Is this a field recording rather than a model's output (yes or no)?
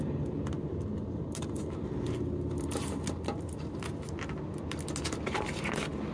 yes